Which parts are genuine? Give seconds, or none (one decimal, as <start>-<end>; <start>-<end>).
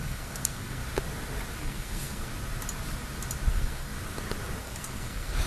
0.8-1.6; 2.3-3.5; 3.9-4.6